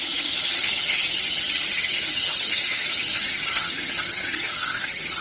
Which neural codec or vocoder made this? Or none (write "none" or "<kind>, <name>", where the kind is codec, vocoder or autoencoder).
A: vocoder, HiFi-GAN